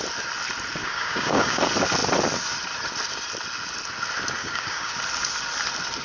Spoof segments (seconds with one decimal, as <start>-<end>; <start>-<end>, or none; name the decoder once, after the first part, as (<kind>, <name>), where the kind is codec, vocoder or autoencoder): 0.8-1.6 (codec, DAC); 4.4-4.9